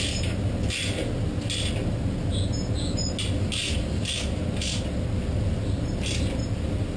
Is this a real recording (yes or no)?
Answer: yes